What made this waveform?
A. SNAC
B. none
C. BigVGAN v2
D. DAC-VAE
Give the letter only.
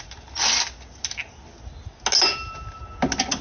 B